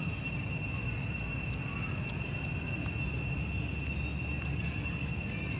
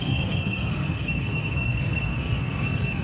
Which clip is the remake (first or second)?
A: second